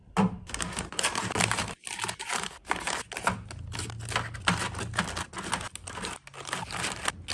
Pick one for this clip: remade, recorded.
recorded